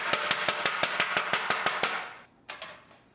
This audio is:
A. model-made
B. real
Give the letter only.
B